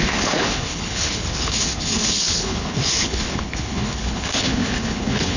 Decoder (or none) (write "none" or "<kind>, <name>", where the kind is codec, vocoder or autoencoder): codec, HILCodec